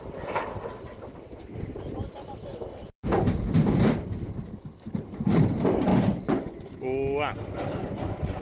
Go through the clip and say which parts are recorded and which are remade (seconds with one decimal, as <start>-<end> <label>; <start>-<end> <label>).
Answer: 0.0-5.9 recorded; 5.9-6.7 remade; 6.7-7.8 recorded; 7.8-8.4 remade

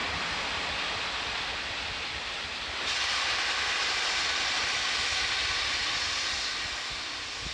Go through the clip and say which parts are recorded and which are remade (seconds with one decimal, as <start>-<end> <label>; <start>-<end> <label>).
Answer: 0.0-7.5 recorded